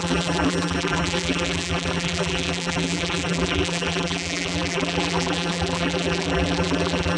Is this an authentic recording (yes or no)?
no